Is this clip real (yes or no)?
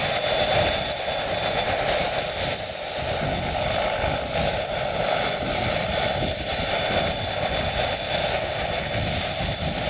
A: yes